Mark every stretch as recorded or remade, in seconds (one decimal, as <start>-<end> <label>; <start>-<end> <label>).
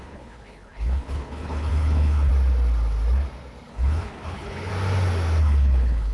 0.0-2.3 remade; 2.3-3.7 recorded; 3.7-4.7 remade; 4.7-5.4 recorded; 5.4-6.1 remade